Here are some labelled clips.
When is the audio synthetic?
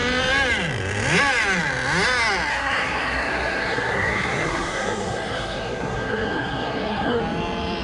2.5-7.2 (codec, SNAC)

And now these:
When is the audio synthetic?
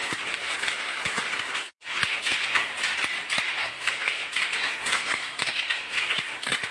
0.0-2.7 (codec, SNAC); 3.4-6.7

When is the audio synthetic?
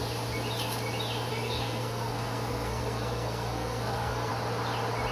1.3-4.3 (codec, SNAC)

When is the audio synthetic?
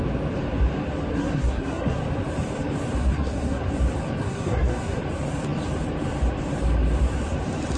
1.1-2.0 (codec, SNAC); 3.0-3.6; 4.2-5.0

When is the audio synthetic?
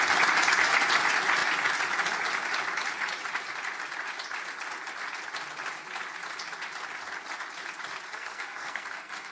8.1-9.3 (codec, SNAC)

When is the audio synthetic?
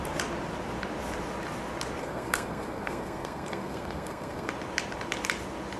2.0-4.5 (codec, SNAC)